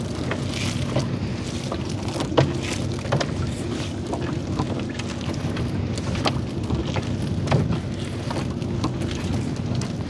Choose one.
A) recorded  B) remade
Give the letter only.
A